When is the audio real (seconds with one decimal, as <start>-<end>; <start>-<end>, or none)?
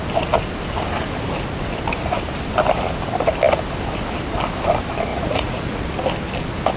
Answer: 0.0-5.1; 5.8-6.8